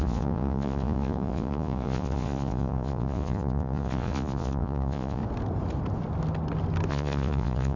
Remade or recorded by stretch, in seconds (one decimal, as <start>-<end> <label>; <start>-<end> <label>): 0.0-5.2 remade; 5.2-6.9 recorded; 6.9-7.8 remade